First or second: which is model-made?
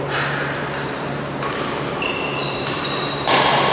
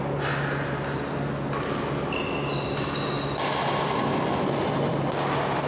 first